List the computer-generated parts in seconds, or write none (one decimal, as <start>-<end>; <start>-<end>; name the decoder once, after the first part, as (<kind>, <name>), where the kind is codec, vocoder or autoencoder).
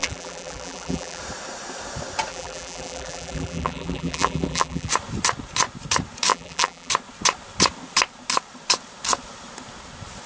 0.0-1.2 (vocoder, BigVGAN v2); 2.3-4.9; 6.3-6.9